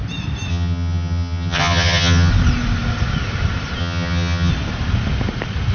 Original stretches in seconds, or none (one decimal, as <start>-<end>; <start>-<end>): 0.0-0.5; 2.3-3.8; 4.5-5.7